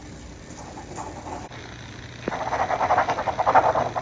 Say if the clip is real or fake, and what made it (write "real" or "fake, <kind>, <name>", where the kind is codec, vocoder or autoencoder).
real